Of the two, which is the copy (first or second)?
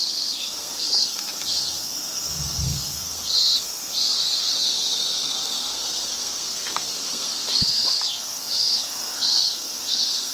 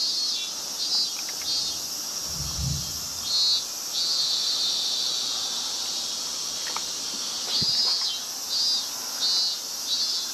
first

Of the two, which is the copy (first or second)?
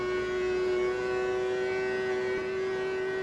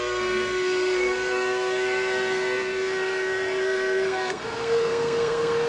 second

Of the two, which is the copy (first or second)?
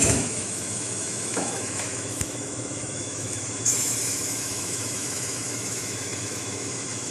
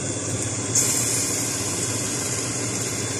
first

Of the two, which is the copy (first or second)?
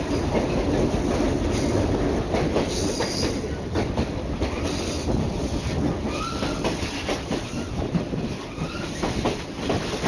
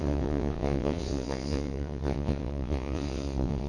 second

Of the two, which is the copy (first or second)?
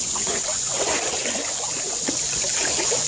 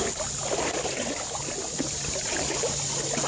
first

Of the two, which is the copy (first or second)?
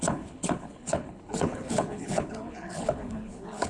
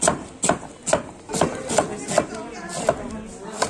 first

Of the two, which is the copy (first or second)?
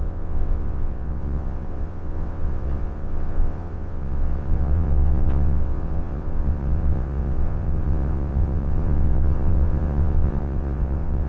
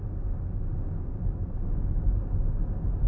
first